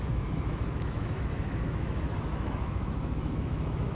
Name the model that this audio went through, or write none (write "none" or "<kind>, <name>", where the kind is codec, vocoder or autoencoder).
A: autoencoder, DAC-VAE